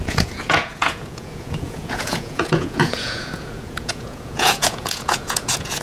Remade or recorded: remade